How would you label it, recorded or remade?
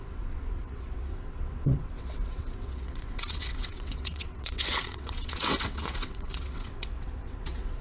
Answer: remade